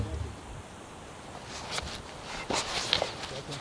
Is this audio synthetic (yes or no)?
no